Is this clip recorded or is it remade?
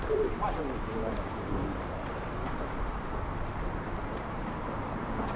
remade